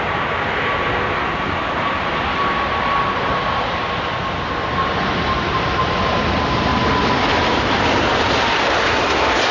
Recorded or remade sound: recorded